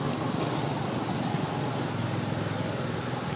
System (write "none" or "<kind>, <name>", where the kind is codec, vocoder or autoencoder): none